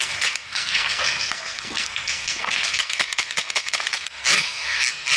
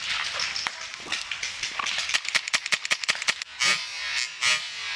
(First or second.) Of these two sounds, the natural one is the second